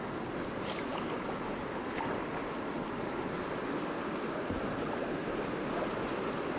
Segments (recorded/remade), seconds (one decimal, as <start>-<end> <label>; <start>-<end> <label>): 0.0-6.6 recorded